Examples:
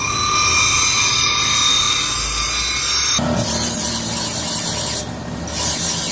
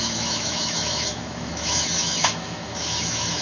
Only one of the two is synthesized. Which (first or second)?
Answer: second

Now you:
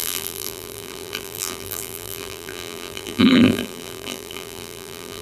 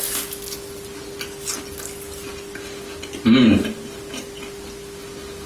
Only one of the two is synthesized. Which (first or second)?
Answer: first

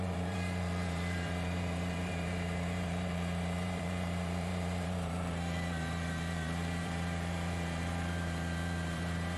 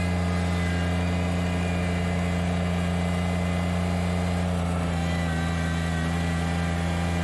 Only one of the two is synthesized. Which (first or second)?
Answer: first